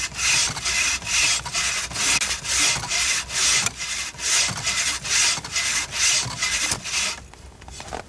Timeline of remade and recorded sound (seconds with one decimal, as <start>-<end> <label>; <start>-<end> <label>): 0.0-3.5 recorded; 3.5-4.1 remade; 4.1-8.1 recorded